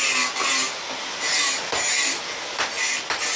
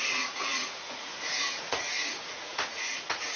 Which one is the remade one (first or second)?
second